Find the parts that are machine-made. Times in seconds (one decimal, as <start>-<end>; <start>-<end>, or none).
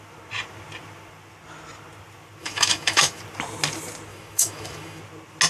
2.4-3.2; 4.1-5.0